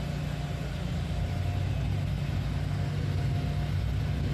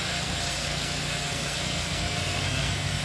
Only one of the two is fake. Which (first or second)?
second